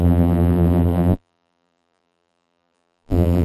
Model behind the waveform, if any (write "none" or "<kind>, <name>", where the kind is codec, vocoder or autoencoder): vocoder, BigVGAN v2